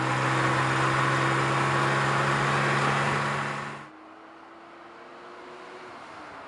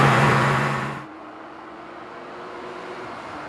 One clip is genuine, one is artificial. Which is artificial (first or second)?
second